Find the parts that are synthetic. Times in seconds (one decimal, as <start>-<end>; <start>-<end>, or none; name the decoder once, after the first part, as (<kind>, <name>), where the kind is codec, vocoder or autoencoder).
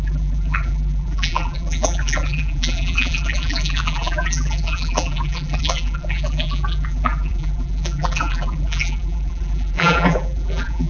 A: 0.0-10.9 (vocoder, BigVGAN v2)